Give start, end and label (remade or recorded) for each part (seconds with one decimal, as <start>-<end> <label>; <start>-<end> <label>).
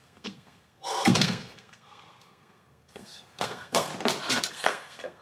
0.0-3.9 remade; 3.9-4.5 recorded; 4.5-5.2 remade